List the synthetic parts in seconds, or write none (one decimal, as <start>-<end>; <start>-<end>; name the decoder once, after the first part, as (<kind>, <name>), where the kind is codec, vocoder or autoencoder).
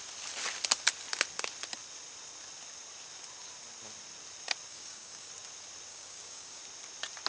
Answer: 4.7-5.3 (codec, DAC); 5.9-6.6